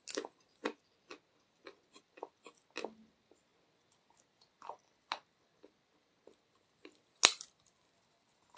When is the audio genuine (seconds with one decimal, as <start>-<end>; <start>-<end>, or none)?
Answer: 0.0-8.6